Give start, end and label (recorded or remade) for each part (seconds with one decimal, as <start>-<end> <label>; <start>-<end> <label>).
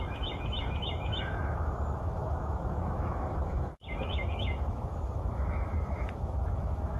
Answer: 0.0-7.0 remade